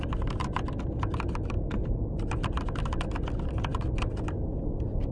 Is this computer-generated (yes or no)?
no